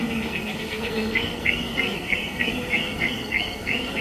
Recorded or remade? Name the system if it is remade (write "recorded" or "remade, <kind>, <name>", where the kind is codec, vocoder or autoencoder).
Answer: remade, codec, SNAC